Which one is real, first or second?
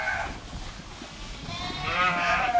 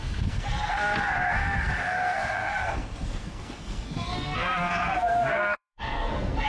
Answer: first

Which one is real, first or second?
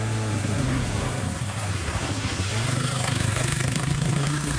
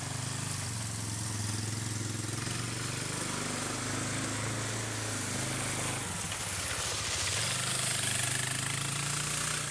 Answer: second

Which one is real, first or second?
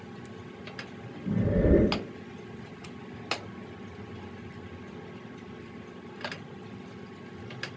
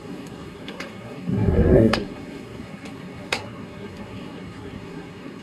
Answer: first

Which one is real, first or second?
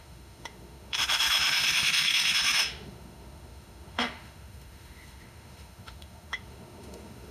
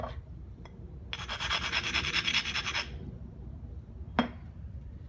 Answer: second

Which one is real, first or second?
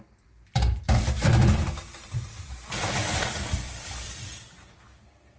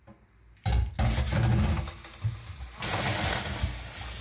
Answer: second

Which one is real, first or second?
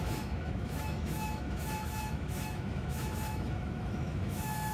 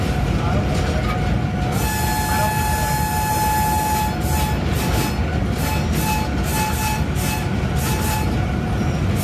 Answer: second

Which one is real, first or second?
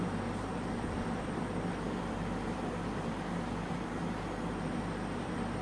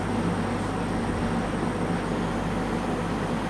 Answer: second